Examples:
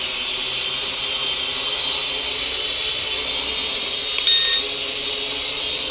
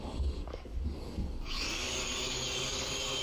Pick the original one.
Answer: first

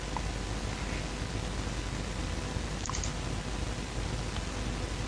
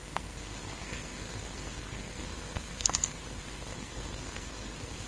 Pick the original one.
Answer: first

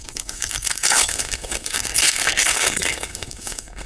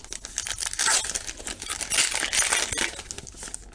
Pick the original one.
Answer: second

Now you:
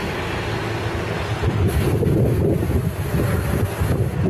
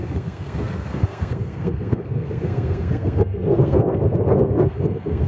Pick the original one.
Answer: first